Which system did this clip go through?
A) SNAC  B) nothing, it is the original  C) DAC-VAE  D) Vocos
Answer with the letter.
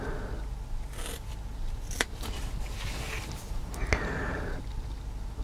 B